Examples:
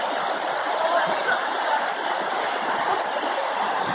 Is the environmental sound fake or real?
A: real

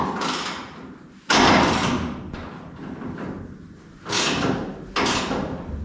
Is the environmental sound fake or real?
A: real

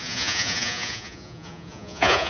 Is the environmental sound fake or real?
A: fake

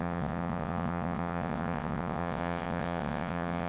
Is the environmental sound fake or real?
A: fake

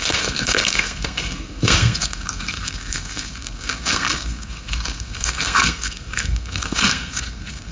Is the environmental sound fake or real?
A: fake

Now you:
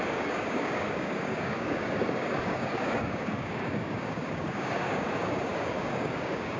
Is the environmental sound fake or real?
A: fake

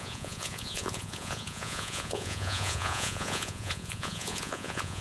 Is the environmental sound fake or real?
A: fake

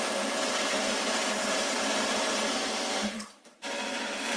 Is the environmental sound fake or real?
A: fake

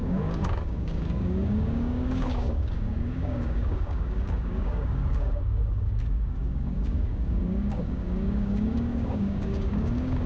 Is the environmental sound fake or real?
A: fake